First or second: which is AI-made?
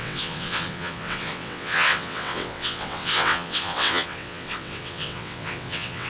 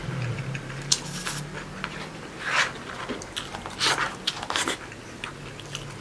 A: first